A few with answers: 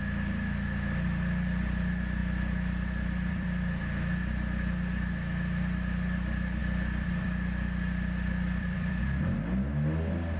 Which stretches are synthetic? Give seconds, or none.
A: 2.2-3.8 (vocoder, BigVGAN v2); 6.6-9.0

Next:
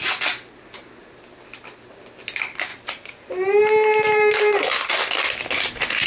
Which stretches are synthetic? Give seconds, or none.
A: 2.7-4.9 (vocoder, BigVGAN v2)

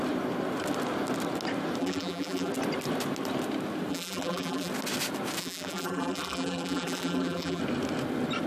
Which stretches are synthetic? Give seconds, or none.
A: 1.8-2.5 (vocoder, BigVGAN v2); 3.9-4.7; 5.4-7.6

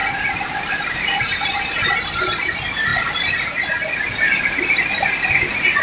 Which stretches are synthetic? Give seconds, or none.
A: 0.0-1.9 (vocoder, BigVGAN v2)

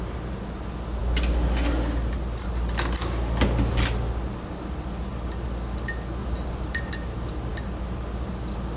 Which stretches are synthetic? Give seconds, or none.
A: 6.2-6.9 (vocoder, BigVGAN v2)

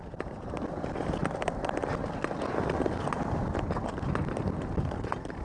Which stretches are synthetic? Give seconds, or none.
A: 0.0-1.2 (vocoder, BigVGAN v2); 3.4-5.4